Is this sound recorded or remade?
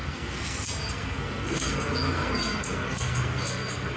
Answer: remade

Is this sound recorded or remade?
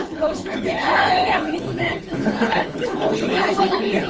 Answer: remade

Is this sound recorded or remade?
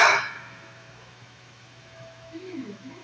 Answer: remade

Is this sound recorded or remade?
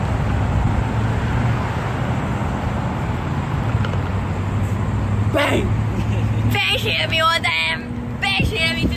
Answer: recorded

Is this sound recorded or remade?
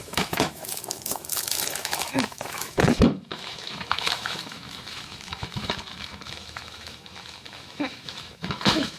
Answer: remade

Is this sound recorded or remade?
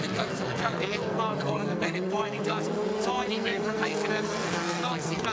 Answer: remade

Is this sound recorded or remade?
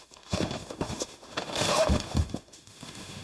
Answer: remade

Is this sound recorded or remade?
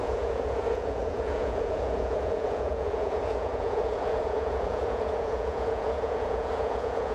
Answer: remade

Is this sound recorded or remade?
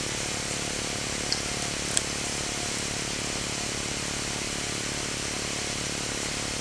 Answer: recorded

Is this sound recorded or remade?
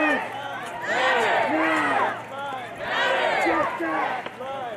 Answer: recorded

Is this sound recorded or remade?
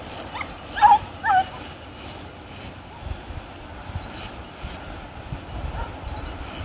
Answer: recorded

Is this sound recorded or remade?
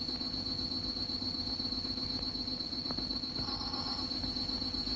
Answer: recorded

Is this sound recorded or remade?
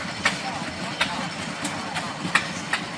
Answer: recorded